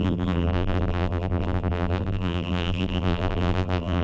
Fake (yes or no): yes